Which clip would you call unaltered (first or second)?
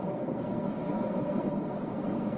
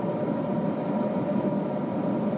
second